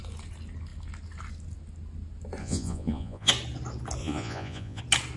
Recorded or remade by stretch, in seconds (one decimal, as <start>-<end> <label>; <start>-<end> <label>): 0.0-2.4 recorded; 2.4-3.3 remade; 3.3-4.0 recorded; 4.0-4.8 remade; 4.8-5.2 recorded